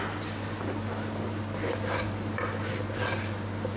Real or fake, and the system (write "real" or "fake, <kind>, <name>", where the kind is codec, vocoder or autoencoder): real